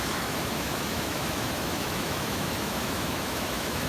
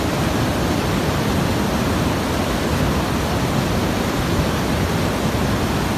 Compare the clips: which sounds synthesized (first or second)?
first